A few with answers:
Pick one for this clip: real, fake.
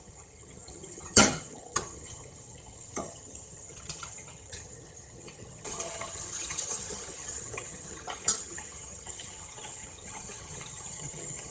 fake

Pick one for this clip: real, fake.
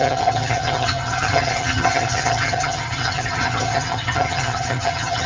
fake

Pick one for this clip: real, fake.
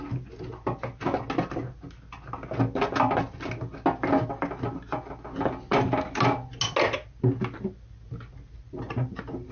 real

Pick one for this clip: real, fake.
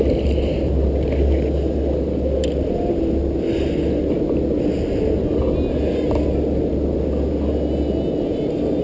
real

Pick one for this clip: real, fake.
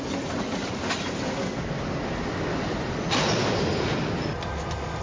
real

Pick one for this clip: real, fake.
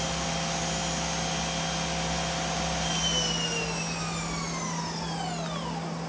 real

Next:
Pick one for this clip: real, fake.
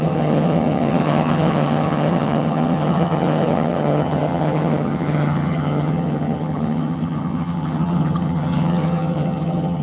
fake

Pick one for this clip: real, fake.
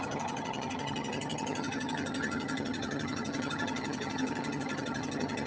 fake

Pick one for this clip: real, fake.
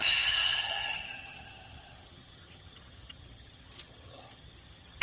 fake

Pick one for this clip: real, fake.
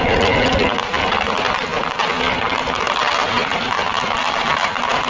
real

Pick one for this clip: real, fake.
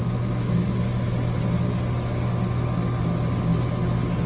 real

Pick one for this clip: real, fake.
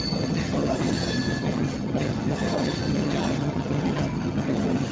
fake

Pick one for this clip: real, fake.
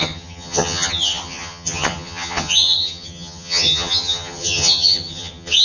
fake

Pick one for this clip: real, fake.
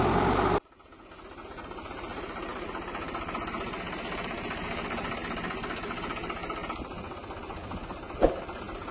real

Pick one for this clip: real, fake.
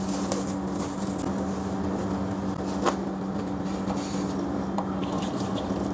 real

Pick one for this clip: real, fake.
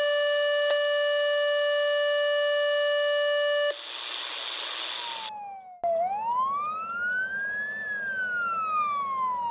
real